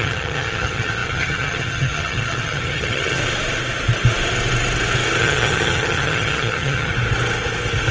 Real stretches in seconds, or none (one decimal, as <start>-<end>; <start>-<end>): 3.2-5.2; 6.9-7.9